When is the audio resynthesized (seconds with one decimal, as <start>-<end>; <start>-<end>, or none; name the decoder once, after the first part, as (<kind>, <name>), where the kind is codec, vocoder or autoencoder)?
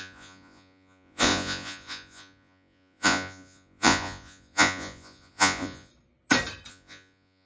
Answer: 0.0-5.9 (vocoder, Vocos); 6.7-7.5